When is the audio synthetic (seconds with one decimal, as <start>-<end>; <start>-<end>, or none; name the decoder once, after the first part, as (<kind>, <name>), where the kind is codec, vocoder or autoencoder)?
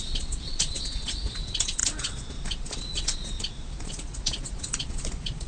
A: 0.0-5.5 (vocoder, Vocos)